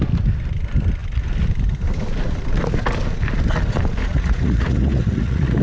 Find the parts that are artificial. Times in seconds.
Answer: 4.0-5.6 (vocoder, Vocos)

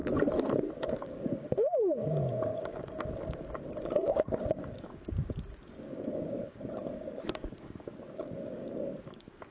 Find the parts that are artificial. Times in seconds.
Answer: 0.9-9.5 (codec, DAC)

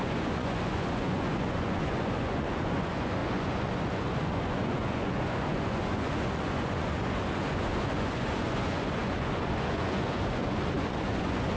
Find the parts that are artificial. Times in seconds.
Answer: 0.0-11.6 (vocoder, Vocos)

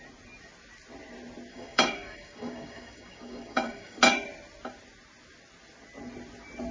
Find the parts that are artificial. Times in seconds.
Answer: 1.5-4.0 (codec, DAC)

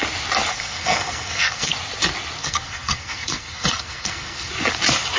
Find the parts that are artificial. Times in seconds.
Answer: 0.5-1.7 (codec, SNAC); 2.4-4.5

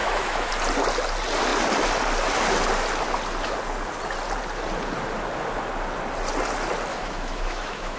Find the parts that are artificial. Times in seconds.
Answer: 0.0-0.5 (autoencoder, DAC-VAE); 6.9-8.0

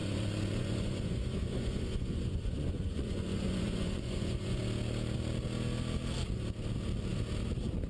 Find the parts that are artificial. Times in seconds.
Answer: 0.0-4.6 (vocoder, Vocos)